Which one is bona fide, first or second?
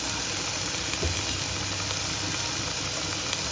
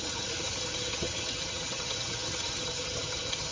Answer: first